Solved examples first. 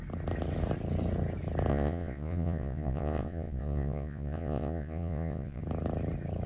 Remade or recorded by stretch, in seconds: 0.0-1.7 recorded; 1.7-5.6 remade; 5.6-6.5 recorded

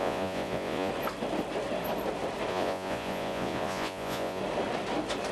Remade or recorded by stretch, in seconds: 0.0-0.9 remade; 0.9-2.5 recorded; 2.5-4.4 remade; 4.4-5.3 recorded